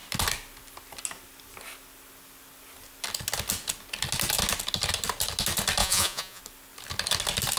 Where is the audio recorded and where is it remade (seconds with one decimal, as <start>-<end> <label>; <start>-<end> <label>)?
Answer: 0.0-5.8 recorded; 5.8-6.4 remade; 6.4-7.6 recorded